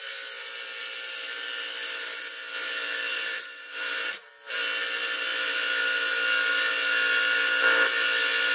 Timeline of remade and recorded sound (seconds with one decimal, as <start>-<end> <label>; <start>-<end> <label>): 0.0-3.1 recorded; 3.1-4.3 remade; 4.3-8.5 recorded